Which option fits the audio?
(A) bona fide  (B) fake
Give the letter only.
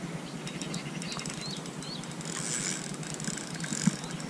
A